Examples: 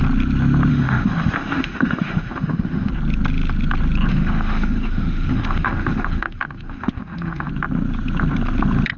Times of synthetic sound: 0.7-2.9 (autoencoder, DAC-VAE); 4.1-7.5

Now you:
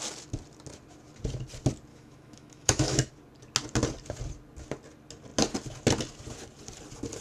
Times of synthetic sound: 1.9-3.1 (autoencoder, DAC-VAE)